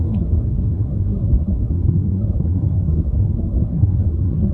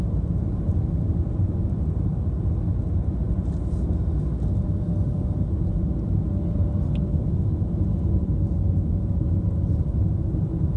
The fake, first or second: first